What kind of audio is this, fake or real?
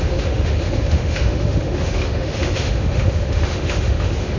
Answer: fake